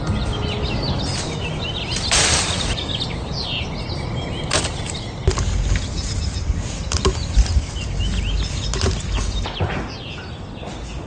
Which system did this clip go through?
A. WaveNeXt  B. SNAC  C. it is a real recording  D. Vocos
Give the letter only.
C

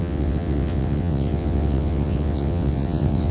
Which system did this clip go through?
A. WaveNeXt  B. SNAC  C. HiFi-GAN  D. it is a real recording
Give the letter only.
A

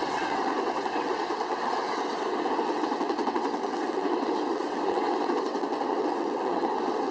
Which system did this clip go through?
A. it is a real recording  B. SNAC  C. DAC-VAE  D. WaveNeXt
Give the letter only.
D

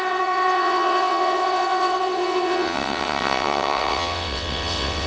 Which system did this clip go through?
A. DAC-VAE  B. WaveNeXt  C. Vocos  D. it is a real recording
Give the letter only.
B